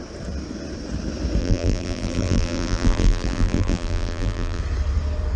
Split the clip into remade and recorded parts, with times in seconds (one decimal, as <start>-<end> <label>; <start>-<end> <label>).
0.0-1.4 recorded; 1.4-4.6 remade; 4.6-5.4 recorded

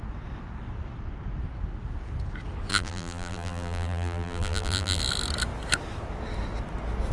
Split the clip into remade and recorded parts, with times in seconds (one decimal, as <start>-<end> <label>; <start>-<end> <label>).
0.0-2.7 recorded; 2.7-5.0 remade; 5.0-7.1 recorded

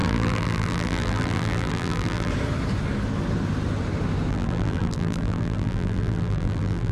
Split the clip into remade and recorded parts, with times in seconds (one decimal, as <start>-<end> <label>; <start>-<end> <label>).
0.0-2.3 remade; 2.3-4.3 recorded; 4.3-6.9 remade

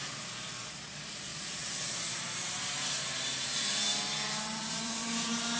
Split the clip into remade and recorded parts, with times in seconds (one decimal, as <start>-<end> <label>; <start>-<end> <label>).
0.0-5.6 remade

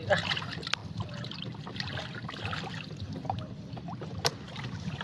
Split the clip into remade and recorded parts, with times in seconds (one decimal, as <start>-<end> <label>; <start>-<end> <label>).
0.0-0.8 recorded; 0.8-3.8 remade; 3.8-5.0 recorded

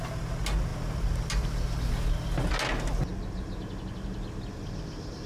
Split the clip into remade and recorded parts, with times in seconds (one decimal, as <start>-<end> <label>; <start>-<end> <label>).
0.0-5.3 recorded